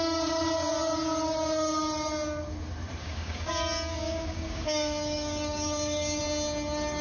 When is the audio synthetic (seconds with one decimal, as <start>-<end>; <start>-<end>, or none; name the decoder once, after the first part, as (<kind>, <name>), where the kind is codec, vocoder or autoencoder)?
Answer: 3.0-6.2 (codec, DAC)